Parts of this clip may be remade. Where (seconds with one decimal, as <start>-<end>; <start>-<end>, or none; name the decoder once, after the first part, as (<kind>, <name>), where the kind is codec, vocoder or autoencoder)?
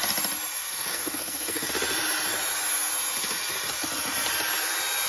0.6-1.7 (codec, SNAC)